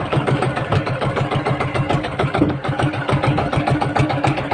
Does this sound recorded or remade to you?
remade